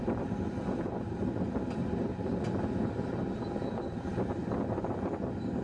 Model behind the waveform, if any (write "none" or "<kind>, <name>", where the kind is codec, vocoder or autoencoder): none